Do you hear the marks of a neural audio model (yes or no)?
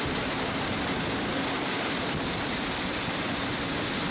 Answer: no